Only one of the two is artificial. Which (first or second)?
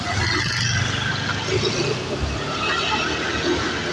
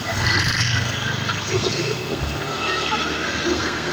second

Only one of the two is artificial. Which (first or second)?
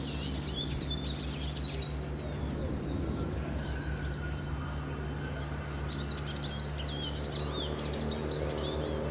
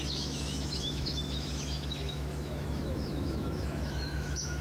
second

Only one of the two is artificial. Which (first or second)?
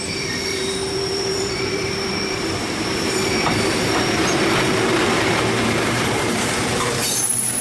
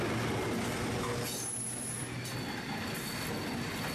first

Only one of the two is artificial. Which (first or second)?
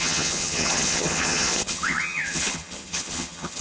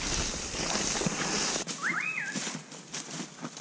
first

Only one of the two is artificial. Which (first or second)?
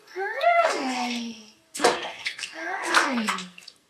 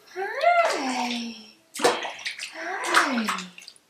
first